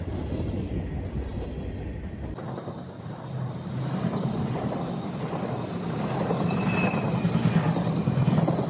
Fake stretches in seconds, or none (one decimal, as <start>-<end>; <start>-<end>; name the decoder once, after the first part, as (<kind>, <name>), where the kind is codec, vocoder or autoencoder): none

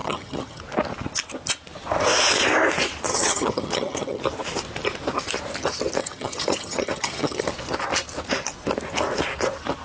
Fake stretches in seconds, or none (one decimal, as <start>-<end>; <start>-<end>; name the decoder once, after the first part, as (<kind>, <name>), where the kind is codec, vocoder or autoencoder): 0.0-0.6 (vocoder, HiFi-GAN); 3.1-4.2; 6.0-7.5

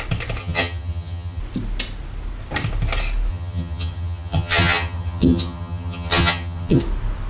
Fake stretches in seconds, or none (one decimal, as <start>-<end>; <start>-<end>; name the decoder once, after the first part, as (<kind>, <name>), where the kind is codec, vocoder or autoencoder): 0.4-1.4 (vocoder, HiFi-GAN); 3.3-6.8